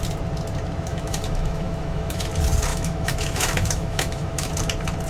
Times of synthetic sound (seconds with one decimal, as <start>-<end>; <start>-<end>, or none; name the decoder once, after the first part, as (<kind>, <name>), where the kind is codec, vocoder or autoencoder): 0.9-2.3 (autoencoder, DAC-VAE); 2.7-4.5